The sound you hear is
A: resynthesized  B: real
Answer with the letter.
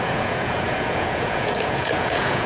A